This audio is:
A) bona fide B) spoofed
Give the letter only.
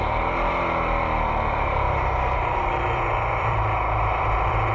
B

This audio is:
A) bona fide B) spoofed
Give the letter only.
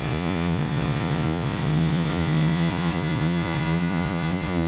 B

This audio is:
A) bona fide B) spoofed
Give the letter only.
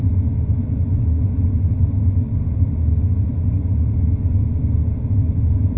A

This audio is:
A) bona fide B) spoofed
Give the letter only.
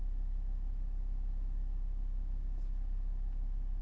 A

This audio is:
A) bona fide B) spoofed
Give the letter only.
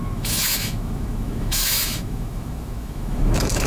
B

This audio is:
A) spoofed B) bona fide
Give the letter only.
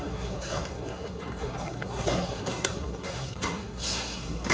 A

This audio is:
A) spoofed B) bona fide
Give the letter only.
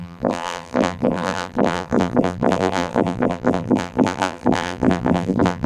A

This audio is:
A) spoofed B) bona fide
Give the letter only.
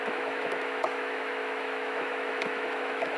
A